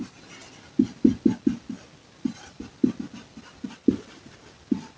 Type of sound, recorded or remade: recorded